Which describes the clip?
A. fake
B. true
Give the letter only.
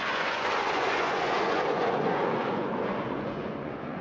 A